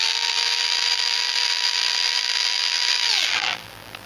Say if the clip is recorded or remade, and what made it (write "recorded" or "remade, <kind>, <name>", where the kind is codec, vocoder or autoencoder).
remade, vocoder, BigVGAN v2